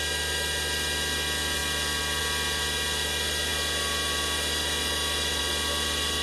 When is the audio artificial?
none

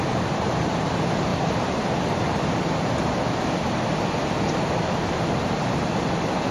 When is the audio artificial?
0.0-6.5 (vocoder, BigVGAN v2)

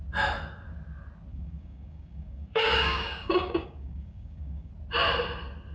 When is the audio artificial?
1.3-4.7 (codec, DAC)

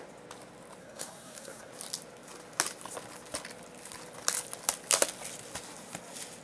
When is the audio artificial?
0.8-1.7 (codec, SNAC)